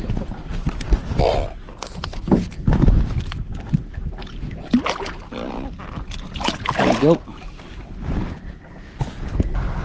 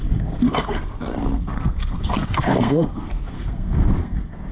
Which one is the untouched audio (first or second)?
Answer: first